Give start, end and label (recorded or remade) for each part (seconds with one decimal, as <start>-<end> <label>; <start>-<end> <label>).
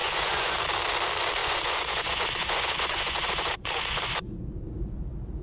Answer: 0.0-0.6 remade; 0.6-1.4 recorded; 1.4-4.6 remade; 4.6-5.4 recorded